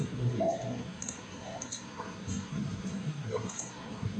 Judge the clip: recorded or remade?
remade